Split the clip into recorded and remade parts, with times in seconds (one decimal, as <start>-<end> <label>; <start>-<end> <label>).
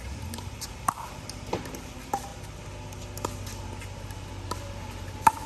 0.0-2.3 remade; 2.3-4.3 recorded; 4.3-5.5 remade